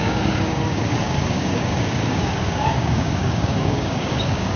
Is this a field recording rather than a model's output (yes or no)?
no